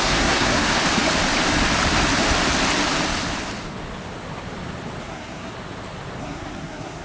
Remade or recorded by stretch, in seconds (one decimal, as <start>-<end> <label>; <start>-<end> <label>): 0.0-0.8 remade; 0.8-5.0 recorded; 5.0-5.5 remade; 5.5-6.2 recorded; 6.2-7.0 remade